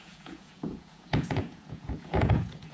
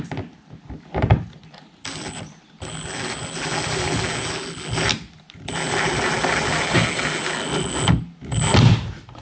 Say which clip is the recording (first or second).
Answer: second